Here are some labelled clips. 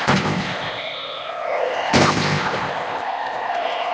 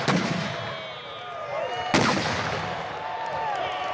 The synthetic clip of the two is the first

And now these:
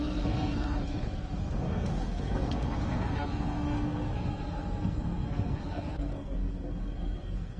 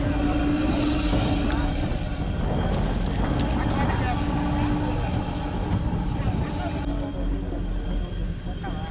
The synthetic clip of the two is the first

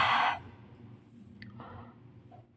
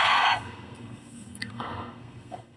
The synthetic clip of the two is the second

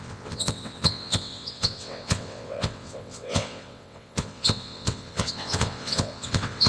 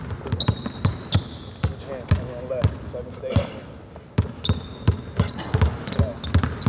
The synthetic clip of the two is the first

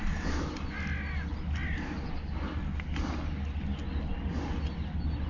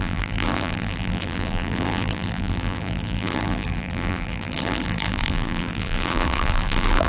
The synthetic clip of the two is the second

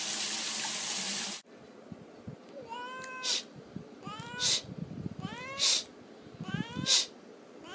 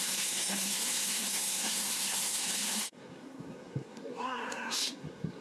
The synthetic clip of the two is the second